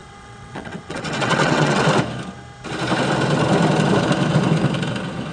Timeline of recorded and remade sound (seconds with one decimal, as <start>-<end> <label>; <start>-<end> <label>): 0.0-1.8 remade; 1.8-5.3 recorded